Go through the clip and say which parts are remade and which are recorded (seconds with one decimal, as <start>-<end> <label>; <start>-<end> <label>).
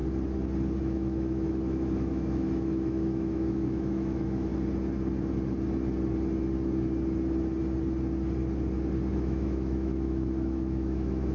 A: 0.0-0.8 recorded; 0.8-4.5 remade; 4.5-9.1 recorded; 9.1-11.3 remade